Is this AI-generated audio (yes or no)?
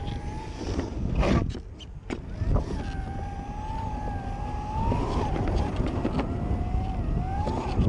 no